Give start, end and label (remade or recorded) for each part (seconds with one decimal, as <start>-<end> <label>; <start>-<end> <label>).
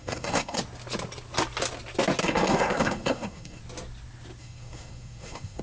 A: 0.0-0.6 remade; 0.6-2.2 recorded; 2.2-3.6 remade; 3.6-4.4 recorded; 4.4-5.6 remade